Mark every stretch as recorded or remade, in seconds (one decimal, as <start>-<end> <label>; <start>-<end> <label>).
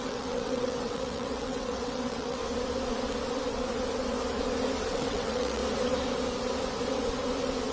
0.0-2.4 remade; 2.4-4.9 recorded; 4.9-5.6 remade; 5.6-7.7 recorded